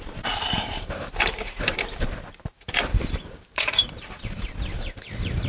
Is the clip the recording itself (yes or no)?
no